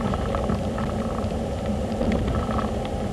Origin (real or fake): real